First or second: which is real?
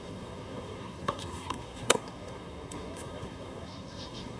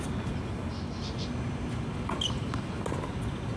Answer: second